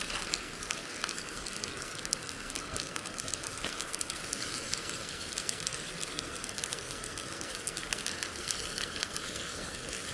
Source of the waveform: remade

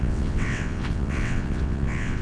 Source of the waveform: remade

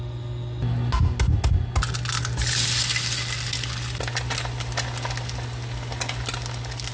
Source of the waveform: recorded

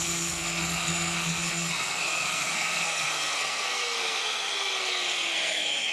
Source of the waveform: remade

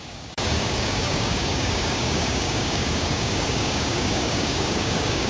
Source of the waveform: remade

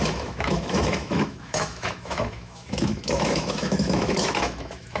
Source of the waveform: remade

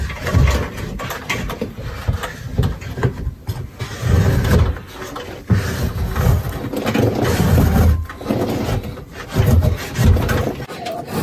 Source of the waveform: recorded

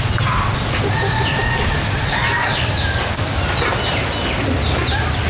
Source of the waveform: recorded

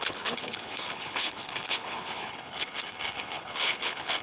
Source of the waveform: remade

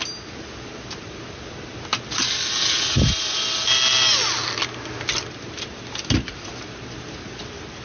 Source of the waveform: recorded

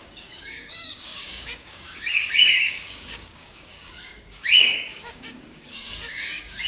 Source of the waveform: remade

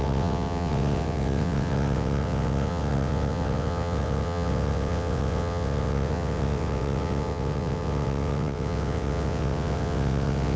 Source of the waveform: remade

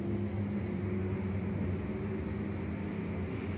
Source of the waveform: recorded